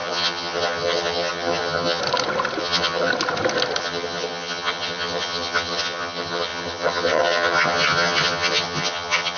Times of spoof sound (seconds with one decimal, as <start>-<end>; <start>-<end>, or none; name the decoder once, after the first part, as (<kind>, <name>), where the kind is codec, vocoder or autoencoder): 0.0-2.0 (vocoder, HiFi-GAN); 2.6-3.1; 3.8-9.4